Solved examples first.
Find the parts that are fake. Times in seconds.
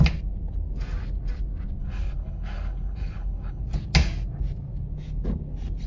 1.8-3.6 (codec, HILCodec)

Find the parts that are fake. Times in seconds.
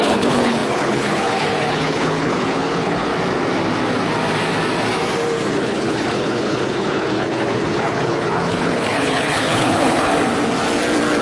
0.0-3.1 (codec, HILCodec); 5.5-10.1